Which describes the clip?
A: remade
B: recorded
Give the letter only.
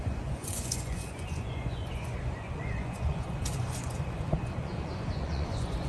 A